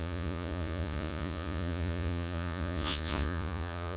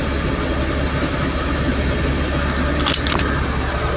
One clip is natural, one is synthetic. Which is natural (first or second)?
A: second